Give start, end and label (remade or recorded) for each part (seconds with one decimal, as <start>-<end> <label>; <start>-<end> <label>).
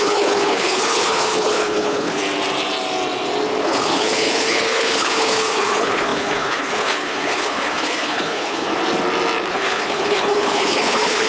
0.0-2.2 remade; 2.2-3.6 recorded; 3.6-8.7 remade; 8.7-9.5 recorded; 9.5-11.3 remade